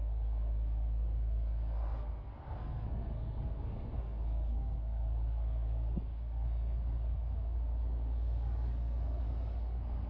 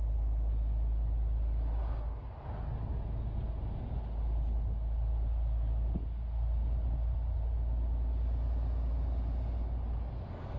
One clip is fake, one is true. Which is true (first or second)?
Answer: second